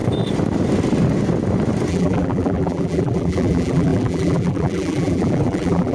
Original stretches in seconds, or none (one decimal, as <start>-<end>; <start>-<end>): 0.0-1.9